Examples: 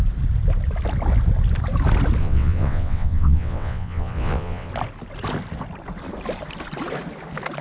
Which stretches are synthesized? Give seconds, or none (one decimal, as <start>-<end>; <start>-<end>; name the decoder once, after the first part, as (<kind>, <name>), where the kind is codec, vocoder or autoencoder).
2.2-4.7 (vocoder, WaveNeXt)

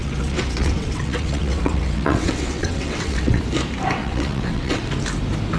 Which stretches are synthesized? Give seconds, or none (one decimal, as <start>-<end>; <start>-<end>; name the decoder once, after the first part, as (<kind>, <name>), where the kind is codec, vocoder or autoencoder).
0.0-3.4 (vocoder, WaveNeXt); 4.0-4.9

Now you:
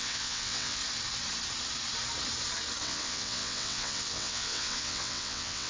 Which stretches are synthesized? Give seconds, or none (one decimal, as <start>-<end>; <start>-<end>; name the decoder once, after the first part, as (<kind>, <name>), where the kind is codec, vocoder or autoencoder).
0.0-0.8 (vocoder, WaveNeXt); 2.8-5.7